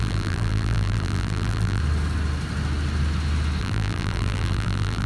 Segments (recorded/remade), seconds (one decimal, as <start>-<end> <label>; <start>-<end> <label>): 0.0-1.8 remade; 1.8-3.6 recorded; 3.6-5.1 remade